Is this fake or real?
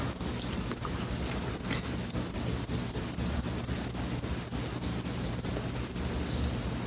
real